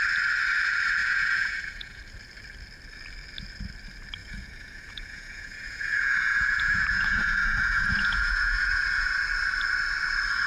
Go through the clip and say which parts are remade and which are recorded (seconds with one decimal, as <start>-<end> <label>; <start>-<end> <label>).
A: 0.0-1.0 recorded; 1.0-2.0 remade; 2.0-4.2 recorded; 4.2-9.1 remade; 9.1-10.5 recorded